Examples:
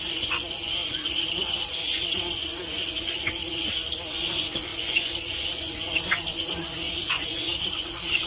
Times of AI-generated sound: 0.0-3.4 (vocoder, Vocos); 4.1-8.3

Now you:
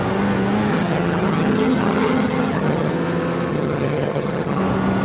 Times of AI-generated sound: 0.7-2.9 (vocoder, HiFi-GAN); 3.5-4.6

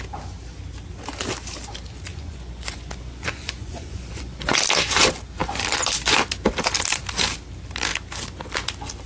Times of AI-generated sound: 2.1-4.6 (vocoder, Vocos)

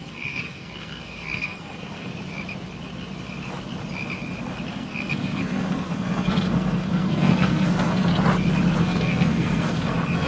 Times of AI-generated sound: 0.0-2.1 (codec, SNAC); 4.7-8.1; 8.8-10.3

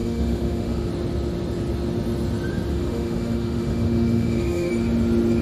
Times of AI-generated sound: 0.0-0.9 (autoencoder, DAC-VAE); 2.7-4.7

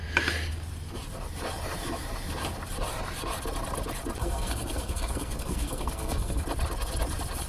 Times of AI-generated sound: 4.2-6.4 (codec, SNAC)

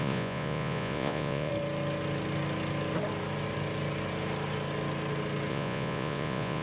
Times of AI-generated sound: 0.0-1.5 (vocoder, Vocos); 5.5-6.6